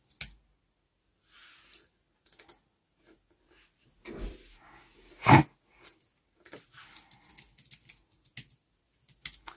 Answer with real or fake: real